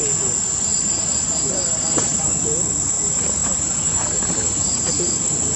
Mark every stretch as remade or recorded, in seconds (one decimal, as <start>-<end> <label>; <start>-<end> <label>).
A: 0.0-0.7 recorded; 0.7-2.3 remade; 2.3-3.4 recorded; 3.4-4.9 remade; 4.9-5.6 recorded